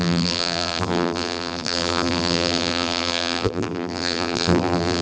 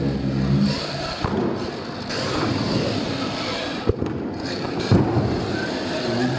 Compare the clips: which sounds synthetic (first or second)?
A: first